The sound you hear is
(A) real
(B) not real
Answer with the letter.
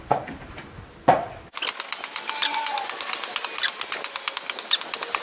A